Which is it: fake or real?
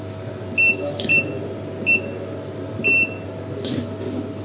real